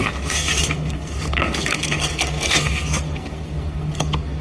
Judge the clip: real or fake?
fake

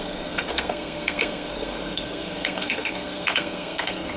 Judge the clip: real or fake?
fake